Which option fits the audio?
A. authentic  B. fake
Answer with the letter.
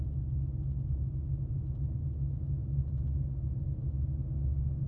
A